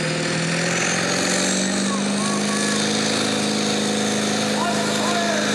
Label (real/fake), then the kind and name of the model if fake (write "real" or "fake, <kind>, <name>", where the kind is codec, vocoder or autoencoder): real